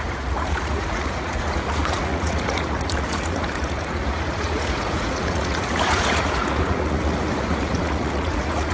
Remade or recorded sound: remade